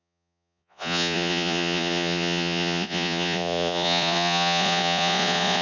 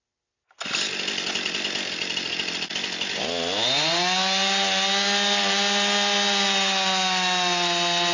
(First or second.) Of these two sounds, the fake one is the first